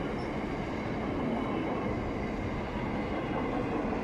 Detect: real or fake real